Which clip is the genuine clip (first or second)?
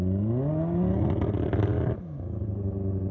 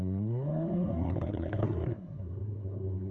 first